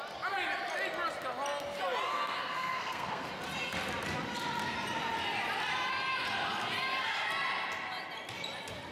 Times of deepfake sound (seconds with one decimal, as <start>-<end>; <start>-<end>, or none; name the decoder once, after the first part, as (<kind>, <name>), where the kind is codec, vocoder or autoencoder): 2.1-3.3 (codec, SNAC)

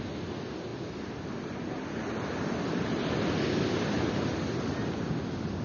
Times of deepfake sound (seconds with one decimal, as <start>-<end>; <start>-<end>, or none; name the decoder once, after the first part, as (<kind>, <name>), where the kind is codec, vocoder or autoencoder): none

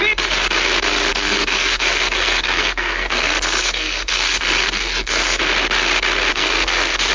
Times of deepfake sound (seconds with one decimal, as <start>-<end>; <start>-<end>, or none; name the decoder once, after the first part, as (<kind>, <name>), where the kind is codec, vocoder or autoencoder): 1.1-5.4 (codec, SNAC); 6.3-7.1

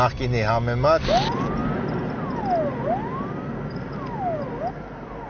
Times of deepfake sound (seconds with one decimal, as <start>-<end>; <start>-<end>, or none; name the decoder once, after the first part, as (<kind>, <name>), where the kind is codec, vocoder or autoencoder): none

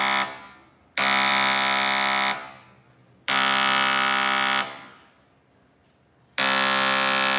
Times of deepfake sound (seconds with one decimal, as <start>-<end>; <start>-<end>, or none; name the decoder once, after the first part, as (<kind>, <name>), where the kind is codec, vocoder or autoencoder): none

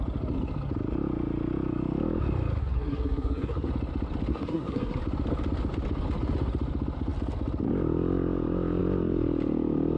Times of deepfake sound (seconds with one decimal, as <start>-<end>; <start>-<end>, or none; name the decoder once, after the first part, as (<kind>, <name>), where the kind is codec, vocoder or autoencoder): 2.6-3.7 (codec, SNAC); 4.3-5.0

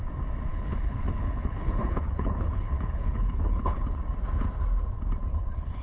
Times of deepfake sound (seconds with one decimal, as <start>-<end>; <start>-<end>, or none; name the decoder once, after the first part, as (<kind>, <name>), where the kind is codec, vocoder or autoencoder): 0.5-4.0 (codec, HILCodec); 5.3-5.8